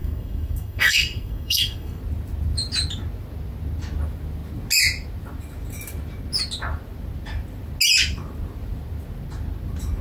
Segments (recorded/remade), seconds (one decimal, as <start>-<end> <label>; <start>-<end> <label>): 0.0-2.0 remade; 2.0-10.0 recorded

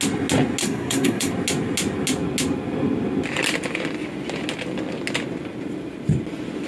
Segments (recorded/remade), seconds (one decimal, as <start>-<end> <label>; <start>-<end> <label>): 0.0-0.6 recorded; 0.6-1.3 remade; 1.3-6.7 recorded

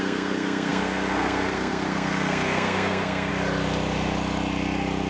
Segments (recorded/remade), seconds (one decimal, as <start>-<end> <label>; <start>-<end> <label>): 0.0-3.3 remade; 3.3-5.1 recorded

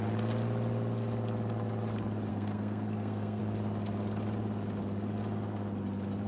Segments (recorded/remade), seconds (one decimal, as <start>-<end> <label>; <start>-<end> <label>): 0.0-2.3 recorded; 2.3-3.4 remade; 3.4-6.3 recorded